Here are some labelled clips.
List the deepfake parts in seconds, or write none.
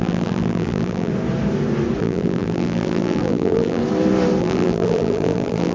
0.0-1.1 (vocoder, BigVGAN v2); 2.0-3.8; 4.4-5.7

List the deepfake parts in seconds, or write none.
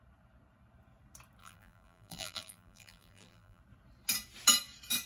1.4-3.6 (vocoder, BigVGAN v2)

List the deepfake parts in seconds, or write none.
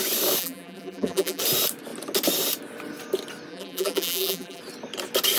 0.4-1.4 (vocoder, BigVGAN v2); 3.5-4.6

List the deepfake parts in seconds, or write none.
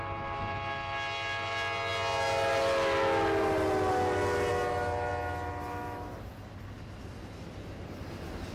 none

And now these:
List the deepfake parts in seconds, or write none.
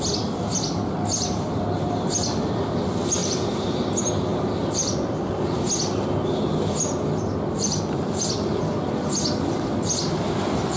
3.2-3.8 (vocoder, BigVGAN v2)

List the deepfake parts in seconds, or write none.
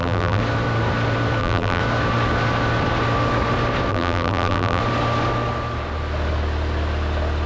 0.0-0.4 (vocoder, BigVGAN v2); 1.4-1.8; 3.9-4.8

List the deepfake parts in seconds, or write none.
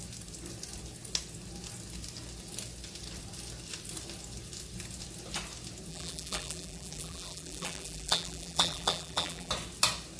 5.9-9.5 (vocoder, BigVGAN v2)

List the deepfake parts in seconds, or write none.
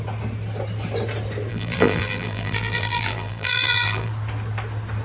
1.5-4.1 (vocoder, BigVGAN v2)